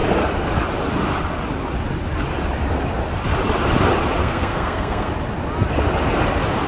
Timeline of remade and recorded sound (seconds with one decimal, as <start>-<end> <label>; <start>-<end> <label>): 0.0-4.2 recorded; 4.2-5.1 remade; 5.1-6.7 recorded